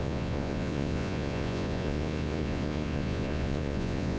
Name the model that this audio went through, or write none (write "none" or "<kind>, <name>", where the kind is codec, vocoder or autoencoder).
vocoder, Vocos